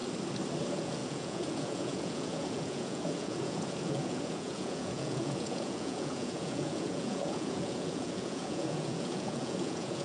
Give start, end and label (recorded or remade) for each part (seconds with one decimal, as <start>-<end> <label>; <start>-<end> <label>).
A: 0.0-0.6 recorded; 0.6-10.0 remade